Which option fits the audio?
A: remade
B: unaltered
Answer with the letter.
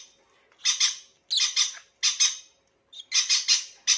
B